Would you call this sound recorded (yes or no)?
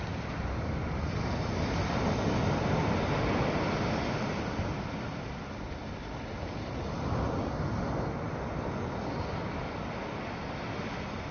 yes